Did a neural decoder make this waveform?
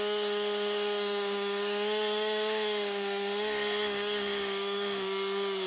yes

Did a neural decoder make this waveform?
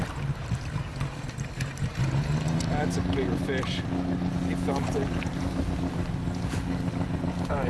no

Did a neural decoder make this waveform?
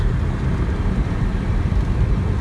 no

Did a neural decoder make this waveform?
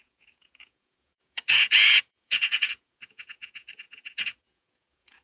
yes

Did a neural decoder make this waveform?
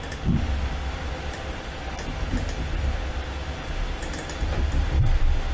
no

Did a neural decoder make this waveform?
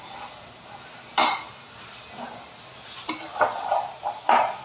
no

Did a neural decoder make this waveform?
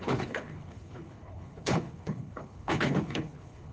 yes